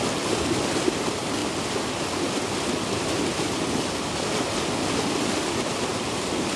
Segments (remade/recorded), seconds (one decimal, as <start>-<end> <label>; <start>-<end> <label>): 0.0-6.6 recorded